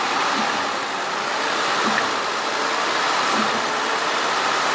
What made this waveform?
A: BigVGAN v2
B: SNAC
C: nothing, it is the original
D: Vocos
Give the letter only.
C